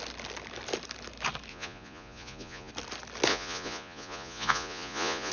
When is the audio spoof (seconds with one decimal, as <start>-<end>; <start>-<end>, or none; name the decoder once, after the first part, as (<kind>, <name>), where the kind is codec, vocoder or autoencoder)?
1.5-2.7 (vocoder, Vocos); 3.3-5.3